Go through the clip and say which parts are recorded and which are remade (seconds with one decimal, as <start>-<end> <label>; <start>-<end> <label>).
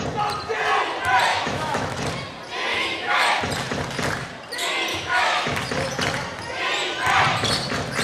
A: 0.0-1.3 recorded; 1.3-2.0 remade; 2.0-2.7 recorded; 2.7-3.4 remade; 3.4-4.9 recorded; 4.9-5.5 remade; 5.5-8.0 recorded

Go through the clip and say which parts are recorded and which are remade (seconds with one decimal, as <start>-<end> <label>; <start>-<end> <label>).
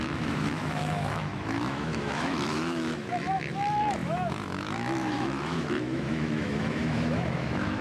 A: 0.0-7.8 remade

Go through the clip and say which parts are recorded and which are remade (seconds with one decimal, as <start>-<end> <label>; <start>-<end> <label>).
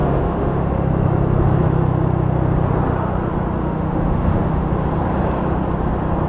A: 0.0-0.7 remade; 0.7-3.6 recorded; 3.6-4.7 remade; 4.7-6.3 recorded